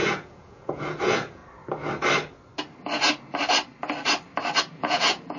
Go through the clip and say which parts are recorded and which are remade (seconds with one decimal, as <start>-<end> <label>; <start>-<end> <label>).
0.0-1.4 remade; 1.4-4.6 recorded; 4.6-5.4 remade